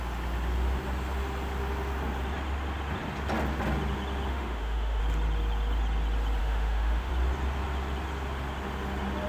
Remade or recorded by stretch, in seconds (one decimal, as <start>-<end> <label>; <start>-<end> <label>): 0.0-4.3 recorded; 4.3-5.0 remade; 5.0-6.4 recorded; 6.4-7.1 remade; 7.1-9.3 recorded